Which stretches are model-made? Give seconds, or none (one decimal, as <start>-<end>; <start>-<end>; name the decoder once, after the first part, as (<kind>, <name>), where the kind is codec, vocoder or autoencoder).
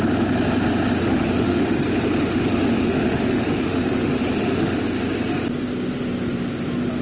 1.0-1.7 (autoencoder, DAC-VAE); 2.3-4.8